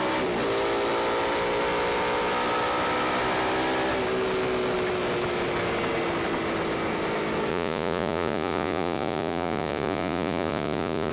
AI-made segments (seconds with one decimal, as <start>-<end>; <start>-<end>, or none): 7.5-11.1